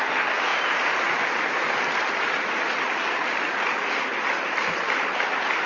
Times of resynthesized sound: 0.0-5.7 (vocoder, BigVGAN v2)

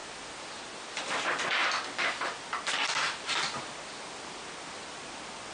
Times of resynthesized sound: none

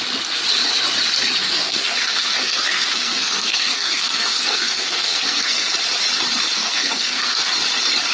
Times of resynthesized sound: 1.4-5.7 (codec, SNAC); 6.6-7.5